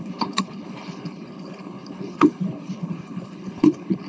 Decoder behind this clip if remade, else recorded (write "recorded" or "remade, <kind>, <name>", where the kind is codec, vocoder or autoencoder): remade, codec, HILCodec